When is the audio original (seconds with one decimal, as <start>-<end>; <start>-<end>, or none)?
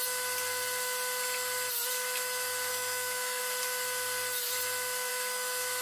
0.0-2.7; 3.4-5.1